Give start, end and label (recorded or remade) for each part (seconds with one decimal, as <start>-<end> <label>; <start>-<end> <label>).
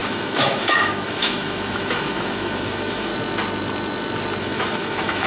0.0-3.1 remade; 3.1-4.4 recorded; 4.4-5.3 remade